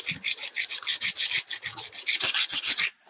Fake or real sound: real